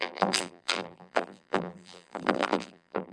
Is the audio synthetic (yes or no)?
yes